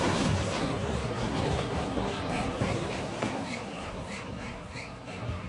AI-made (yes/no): yes